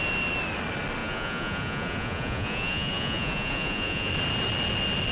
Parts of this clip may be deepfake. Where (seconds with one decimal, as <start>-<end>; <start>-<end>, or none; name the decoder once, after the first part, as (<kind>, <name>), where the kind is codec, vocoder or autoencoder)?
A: 1.0-4.1 (vocoder, Vocos)

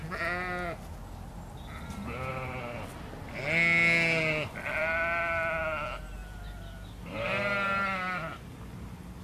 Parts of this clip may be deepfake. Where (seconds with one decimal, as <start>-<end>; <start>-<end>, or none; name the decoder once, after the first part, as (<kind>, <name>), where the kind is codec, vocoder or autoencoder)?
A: none

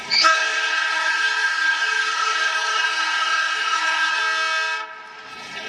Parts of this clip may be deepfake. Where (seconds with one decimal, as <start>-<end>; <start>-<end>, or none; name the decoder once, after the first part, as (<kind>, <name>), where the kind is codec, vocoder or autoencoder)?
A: 0.0-4.2 (codec, HILCodec); 5.3-5.7

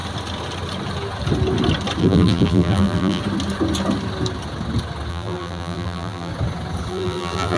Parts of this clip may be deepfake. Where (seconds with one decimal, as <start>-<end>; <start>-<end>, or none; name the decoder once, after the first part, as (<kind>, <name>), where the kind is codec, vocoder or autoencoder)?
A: 2.0-3.2 (vocoder, BigVGAN v2); 5.1-6.3; 6.9-7.6